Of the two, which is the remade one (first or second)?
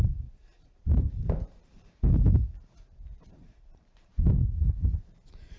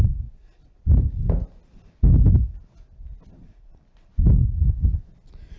first